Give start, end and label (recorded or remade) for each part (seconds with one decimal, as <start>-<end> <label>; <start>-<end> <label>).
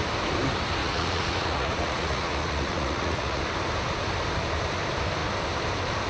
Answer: 0.0-0.8 recorded; 0.8-3.4 remade; 3.4-6.1 recorded